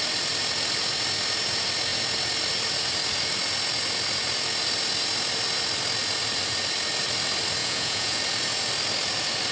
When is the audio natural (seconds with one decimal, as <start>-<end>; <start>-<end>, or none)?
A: 0.0-7.6; 8.2-9.5